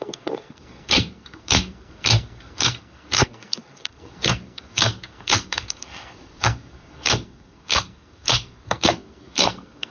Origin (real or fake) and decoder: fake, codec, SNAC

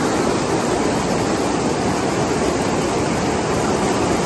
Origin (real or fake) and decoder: real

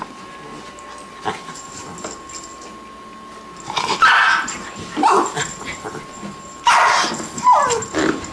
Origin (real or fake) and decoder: real